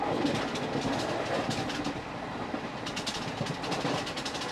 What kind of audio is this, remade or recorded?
recorded